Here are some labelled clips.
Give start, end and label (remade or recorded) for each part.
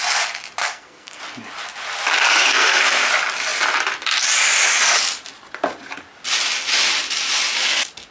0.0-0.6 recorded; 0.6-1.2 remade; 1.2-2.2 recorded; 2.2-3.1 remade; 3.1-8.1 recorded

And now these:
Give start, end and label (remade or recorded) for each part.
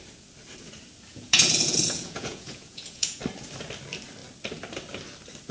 0.0-1.1 recorded; 1.1-3.2 remade; 3.2-5.5 recorded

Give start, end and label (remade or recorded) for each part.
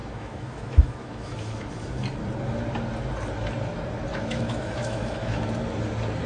0.0-1.7 remade; 1.7-4.1 recorded; 4.1-5.5 remade; 5.5-6.3 recorded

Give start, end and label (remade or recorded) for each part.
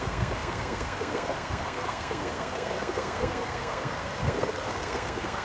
0.0-5.4 remade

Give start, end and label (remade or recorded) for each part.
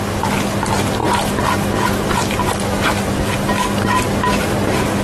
0.0-5.0 recorded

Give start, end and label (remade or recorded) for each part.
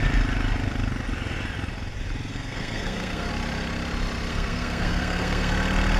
0.0-2.3 recorded; 2.3-3.3 remade; 3.3-4.3 recorded; 4.3-5.5 remade; 5.5-6.0 recorded